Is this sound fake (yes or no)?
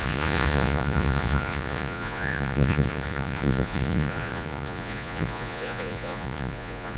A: yes